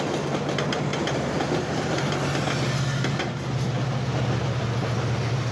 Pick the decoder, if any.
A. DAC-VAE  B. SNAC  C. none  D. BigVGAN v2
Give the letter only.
C